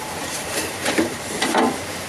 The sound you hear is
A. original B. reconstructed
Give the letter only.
B